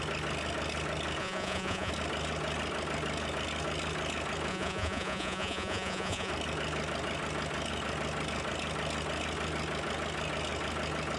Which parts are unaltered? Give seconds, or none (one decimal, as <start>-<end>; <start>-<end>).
0.0-1.2; 1.9-4.5; 6.3-11.2